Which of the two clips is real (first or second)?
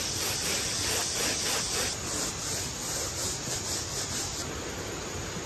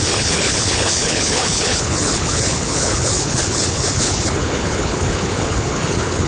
first